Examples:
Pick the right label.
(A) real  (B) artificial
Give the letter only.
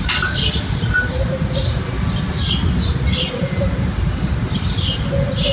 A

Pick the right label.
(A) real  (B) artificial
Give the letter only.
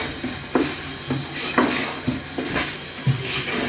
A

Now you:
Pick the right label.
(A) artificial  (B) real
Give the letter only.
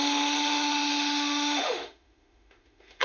A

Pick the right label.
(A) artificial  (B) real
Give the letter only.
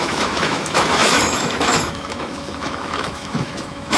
A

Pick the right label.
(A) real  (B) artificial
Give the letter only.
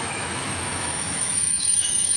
B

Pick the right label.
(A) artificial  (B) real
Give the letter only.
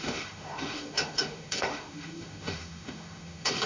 A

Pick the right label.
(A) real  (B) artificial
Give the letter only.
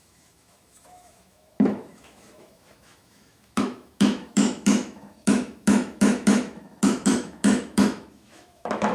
B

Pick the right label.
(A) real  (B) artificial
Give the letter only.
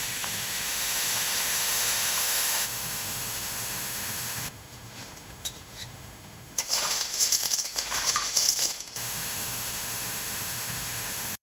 B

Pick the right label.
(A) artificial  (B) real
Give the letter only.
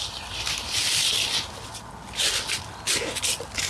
B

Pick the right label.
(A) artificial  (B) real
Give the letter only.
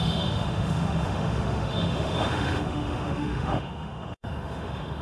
A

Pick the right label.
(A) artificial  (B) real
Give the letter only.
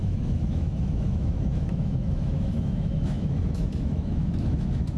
A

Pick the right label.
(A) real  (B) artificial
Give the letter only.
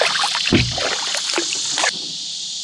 A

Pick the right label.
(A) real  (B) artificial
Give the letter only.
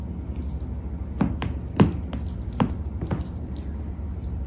A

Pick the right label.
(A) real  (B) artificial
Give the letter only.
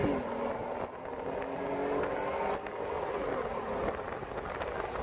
A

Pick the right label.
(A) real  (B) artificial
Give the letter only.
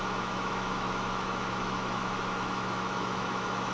B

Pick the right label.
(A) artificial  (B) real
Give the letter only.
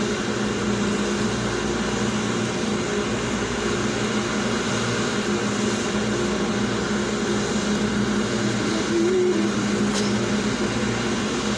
B